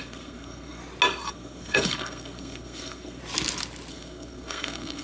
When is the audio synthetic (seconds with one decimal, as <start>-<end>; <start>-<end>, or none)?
0.0-0.8; 1.3-3.2; 3.9-5.0